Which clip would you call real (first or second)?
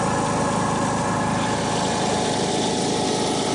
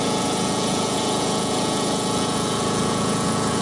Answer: first